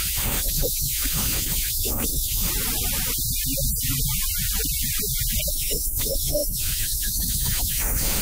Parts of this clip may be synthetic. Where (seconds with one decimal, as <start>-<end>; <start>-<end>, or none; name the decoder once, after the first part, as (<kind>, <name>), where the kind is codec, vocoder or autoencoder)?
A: 0.0-2.5 (autoencoder, DAC-VAE); 5.5-8.2